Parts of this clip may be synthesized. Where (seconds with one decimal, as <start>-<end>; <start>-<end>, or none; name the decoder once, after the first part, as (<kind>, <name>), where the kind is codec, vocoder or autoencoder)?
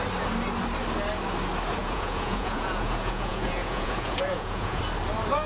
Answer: 1.8-4.8 (vocoder, Vocos)